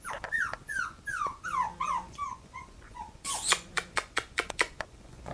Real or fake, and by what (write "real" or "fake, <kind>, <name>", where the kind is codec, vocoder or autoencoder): fake, vocoder, Vocos